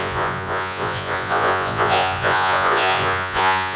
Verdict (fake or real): fake